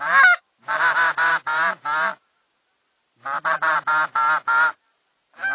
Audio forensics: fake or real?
real